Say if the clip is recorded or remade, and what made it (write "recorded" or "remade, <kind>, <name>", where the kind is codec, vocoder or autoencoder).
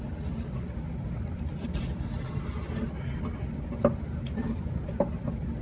recorded